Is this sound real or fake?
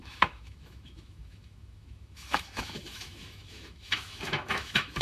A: fake